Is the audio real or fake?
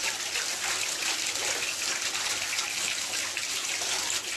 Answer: real